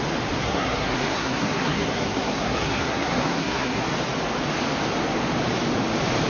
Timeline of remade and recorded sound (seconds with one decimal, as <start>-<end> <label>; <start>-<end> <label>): 0.0-0.4 recorded; 0.4-3.8 remade; 3.8-6.3 recorded